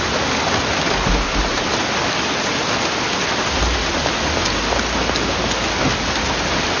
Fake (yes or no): no